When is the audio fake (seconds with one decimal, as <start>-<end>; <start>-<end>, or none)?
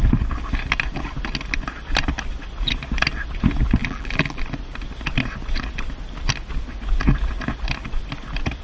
3.8-4.4